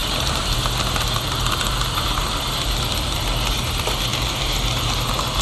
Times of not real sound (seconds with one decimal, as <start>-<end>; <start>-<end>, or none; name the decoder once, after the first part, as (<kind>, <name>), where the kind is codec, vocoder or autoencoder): 0.0-3.2 (vocoder, BigVGAN v2); 4.1-4.9